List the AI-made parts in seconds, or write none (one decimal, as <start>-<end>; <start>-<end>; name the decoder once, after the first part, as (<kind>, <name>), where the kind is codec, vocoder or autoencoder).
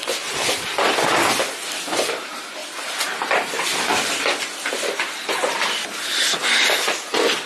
none